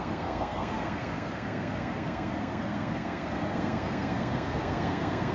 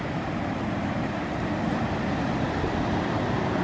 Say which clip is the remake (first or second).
first